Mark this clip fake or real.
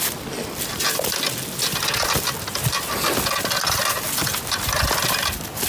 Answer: real